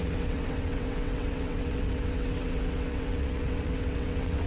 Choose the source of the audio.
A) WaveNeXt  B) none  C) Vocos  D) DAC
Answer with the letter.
A